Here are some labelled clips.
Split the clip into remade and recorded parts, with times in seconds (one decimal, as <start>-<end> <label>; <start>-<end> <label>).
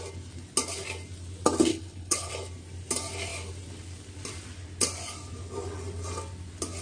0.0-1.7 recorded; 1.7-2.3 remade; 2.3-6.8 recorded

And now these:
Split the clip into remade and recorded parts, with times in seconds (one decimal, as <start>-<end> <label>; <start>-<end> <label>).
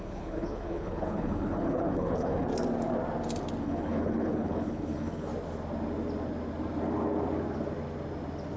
0.0-2.5 remade; 2.5-3.6 recorded; 3.6-5.3 remade; 5.3-8.6 recorded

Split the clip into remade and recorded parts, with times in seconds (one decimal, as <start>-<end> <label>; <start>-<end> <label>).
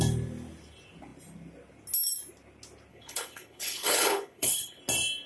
0.0-2.9 recorded; 2.9-4.8 remade; 4.8-5.3 recorded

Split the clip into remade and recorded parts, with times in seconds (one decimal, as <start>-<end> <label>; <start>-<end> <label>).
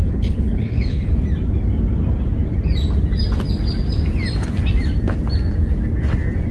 0.0-1.1 remade; 1.1-6.5 recorded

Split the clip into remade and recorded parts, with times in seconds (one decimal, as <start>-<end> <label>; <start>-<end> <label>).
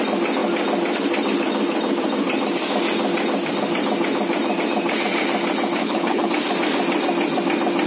0.0-5.8 recorded; 5.8-6.3 remade; 6.3-7.9 recorded